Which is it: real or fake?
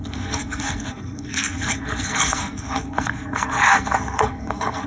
fake